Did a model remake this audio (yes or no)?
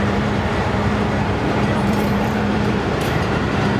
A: yes